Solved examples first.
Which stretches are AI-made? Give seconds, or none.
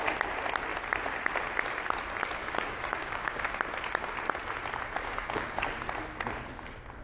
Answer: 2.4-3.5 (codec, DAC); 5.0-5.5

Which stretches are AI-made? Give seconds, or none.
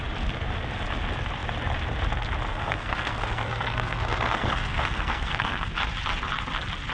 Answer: 2.5-5.7 (codec, SNAC)